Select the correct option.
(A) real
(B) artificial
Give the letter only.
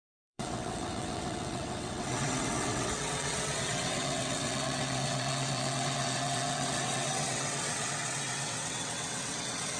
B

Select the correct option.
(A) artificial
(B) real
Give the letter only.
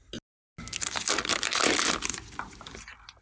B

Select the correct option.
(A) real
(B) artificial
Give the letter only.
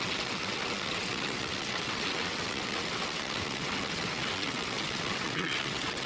B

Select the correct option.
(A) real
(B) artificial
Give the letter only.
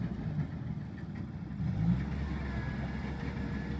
A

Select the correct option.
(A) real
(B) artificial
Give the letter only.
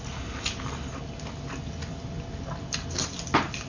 A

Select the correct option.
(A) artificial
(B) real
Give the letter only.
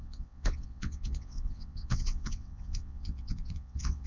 A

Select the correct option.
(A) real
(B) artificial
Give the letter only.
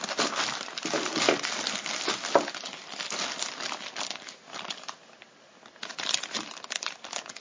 A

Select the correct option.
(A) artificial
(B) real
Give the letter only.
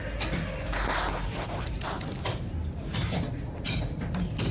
B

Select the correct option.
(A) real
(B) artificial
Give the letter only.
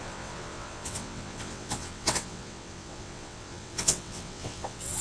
B